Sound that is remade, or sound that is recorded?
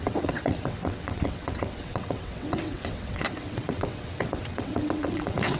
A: remade